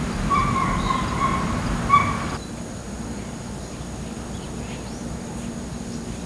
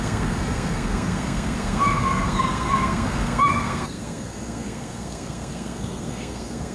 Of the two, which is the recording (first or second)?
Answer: first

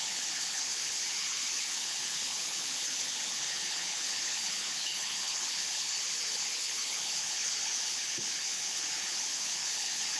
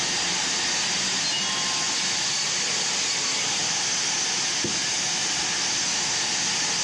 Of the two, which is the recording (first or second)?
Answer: second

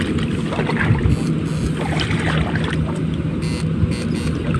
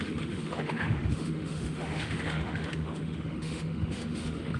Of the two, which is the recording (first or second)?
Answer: first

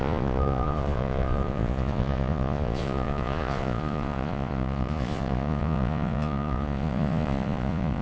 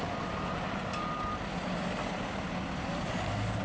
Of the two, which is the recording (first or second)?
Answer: second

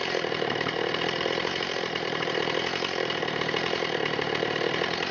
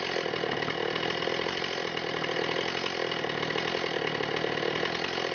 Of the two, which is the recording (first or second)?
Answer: second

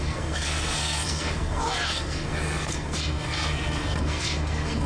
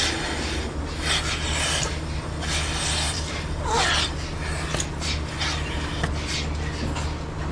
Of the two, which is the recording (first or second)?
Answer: second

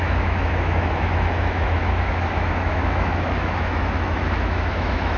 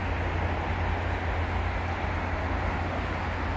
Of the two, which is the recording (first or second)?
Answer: second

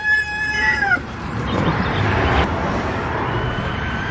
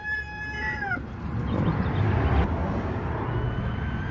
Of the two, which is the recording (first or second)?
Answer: second